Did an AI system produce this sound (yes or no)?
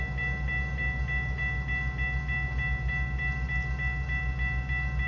no